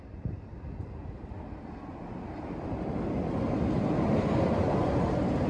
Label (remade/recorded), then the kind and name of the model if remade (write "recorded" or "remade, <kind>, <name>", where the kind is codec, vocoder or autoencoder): recorded